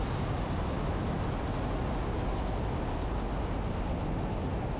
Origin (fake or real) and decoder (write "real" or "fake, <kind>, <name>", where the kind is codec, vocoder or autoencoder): real